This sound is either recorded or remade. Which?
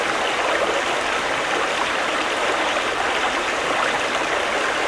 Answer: recorded